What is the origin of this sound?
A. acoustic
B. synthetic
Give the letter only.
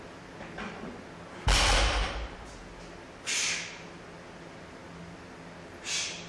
A